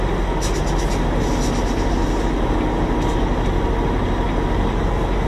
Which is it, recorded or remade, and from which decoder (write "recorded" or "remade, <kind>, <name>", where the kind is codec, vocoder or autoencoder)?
recorded